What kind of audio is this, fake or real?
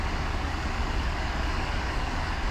fake